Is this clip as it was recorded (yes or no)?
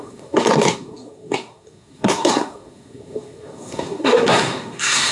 no